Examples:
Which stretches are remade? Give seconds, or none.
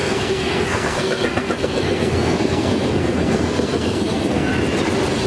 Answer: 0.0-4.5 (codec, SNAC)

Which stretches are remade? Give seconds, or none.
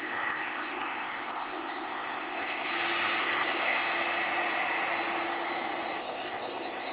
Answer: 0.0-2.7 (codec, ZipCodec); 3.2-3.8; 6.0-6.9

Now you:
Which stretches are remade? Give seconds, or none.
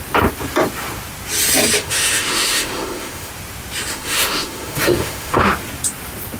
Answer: 1.8-3.3 (autoencoder, DAC-VAE); 3.9-5.5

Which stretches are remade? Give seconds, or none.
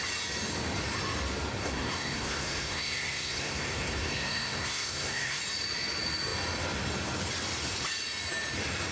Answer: 1.6-5.4 (codec, SNAC)